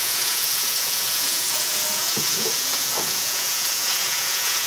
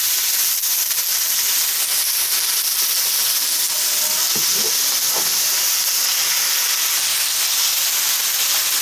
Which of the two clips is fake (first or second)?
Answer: first